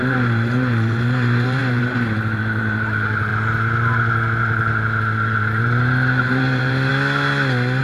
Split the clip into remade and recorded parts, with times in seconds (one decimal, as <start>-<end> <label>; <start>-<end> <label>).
0.0-3.3 remade; 3.3-4.4 recorded; 4.4-6.9 remade; 6.9-7.8 recorded